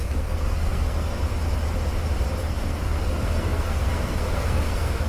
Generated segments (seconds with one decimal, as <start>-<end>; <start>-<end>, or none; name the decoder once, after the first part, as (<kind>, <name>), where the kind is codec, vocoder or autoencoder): 0.0-1.2 (codec, SNAC); 2.4-5.1